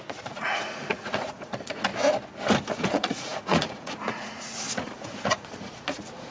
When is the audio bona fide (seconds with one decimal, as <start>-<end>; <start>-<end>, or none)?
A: 1.9-2.7